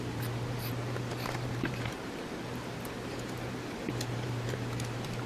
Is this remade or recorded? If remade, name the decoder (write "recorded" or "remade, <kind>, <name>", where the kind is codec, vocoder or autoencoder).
remade, vocoder, BigVGAN v2